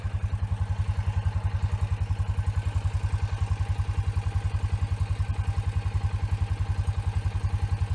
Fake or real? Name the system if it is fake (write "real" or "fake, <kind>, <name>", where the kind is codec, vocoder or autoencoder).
real